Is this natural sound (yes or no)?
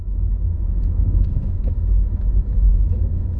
no